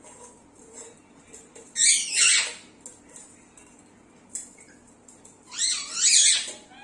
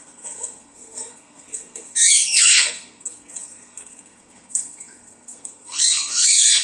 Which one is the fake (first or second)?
second